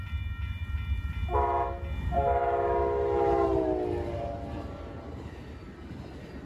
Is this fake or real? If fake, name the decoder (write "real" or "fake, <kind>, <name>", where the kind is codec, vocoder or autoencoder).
real